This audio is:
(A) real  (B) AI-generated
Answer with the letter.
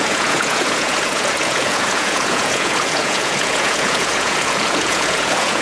B